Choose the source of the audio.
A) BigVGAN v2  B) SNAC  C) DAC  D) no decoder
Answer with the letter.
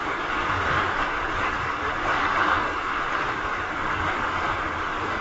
C